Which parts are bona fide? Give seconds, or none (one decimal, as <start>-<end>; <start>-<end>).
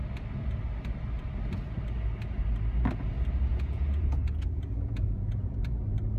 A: 0.0-3.5; 5.8-6.2